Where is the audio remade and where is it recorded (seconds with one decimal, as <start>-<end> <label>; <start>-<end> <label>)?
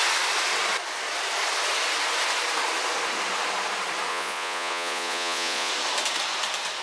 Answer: 0.0-4.1 recorded; 4.1-5.7 remade; 5.7-6.8 recorded